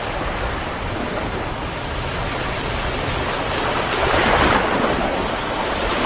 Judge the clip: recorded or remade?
recorded